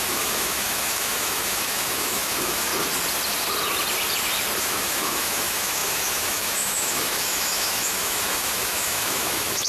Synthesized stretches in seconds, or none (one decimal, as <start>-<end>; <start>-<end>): 0.0-2.7; 4.6-9.7